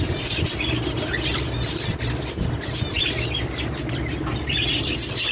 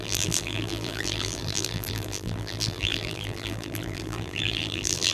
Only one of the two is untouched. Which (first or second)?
first